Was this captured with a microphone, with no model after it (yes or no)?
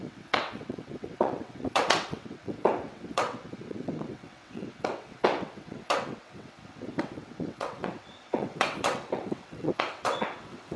no